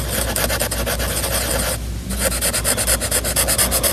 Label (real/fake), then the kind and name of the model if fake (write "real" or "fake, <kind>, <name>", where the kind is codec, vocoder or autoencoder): real